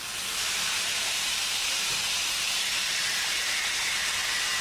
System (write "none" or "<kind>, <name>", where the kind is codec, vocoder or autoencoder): vocoder, BigVGAN v2